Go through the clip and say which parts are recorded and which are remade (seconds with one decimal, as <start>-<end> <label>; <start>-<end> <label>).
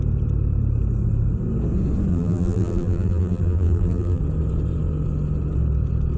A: 0.0-2.1 recorded; 2.1-4.2 remade; 4.2-6.2 recorded